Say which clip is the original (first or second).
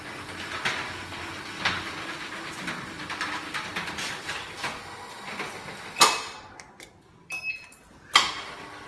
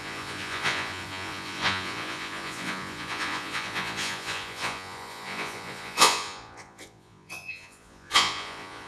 first